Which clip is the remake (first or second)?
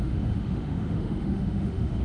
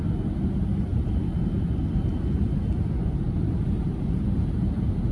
first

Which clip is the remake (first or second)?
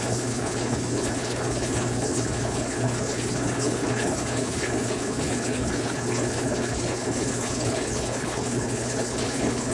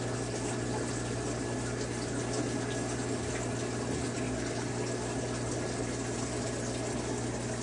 first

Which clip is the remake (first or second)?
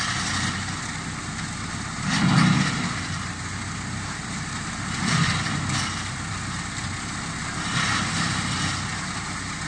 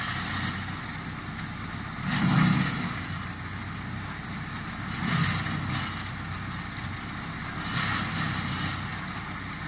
first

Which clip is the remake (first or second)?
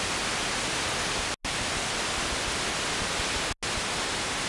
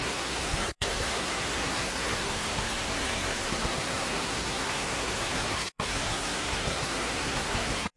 second